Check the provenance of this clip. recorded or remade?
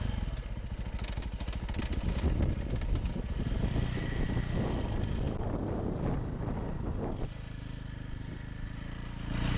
recorded